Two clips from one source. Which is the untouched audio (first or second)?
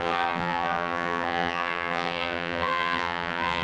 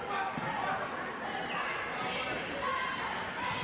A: second